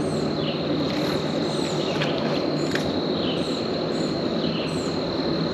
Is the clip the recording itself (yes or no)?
yes